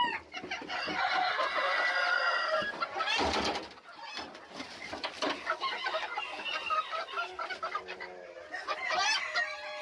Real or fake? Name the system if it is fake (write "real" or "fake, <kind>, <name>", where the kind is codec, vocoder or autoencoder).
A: real